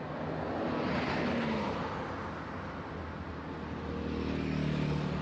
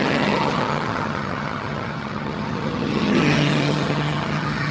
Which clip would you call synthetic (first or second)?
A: second